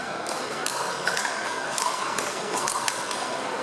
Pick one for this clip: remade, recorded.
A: remade